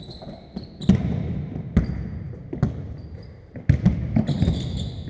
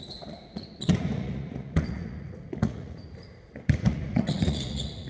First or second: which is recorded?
first